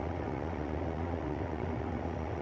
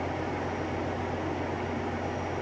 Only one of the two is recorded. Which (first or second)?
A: second